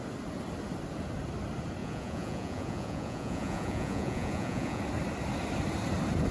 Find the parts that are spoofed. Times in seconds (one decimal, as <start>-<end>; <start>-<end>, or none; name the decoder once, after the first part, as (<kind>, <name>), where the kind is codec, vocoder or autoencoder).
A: 1.8-4.8 (vocoder, Vocos)